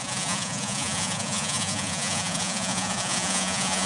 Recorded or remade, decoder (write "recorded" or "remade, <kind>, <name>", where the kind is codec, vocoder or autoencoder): remade, vocoder, Vocos